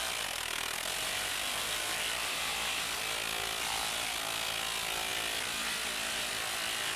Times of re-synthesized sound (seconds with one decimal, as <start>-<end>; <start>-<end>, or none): none